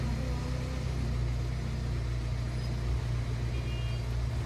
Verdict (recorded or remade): recorded